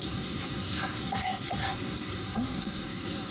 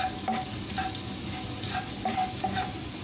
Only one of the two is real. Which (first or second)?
second